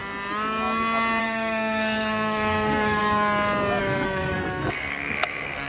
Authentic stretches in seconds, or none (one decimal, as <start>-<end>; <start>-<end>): 0.0-1.2; 3.0-3.8